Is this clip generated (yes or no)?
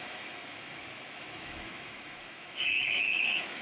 yes